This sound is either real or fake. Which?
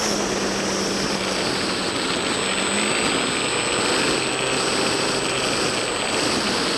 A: real